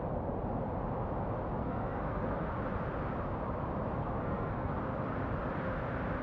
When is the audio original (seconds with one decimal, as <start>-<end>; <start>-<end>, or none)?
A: 0.0-1.6; 2.5-4.0; 4.7-6.2